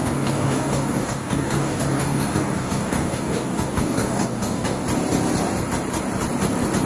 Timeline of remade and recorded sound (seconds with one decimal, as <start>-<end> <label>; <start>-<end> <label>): 0.0-4.8 remade; 4.8-6.9 recorded